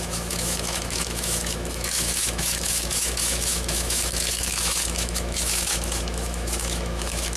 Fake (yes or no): yes